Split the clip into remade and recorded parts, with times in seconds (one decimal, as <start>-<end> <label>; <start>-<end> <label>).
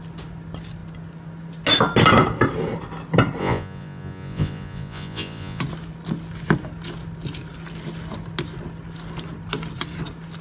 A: 0.0-3.4 recorded; 3.4-5.6 remade; 5.6-10.4 recorded